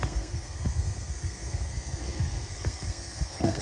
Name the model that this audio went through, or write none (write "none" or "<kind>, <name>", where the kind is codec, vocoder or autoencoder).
codec, SNAC